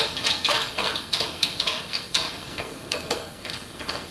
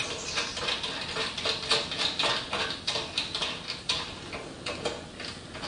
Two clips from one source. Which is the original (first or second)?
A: second